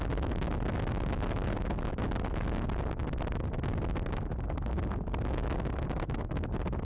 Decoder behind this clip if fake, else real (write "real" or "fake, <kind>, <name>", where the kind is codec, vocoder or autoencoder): real